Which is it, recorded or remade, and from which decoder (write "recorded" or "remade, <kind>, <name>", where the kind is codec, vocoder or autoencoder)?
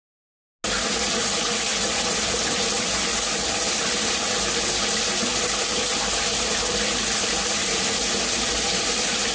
recorded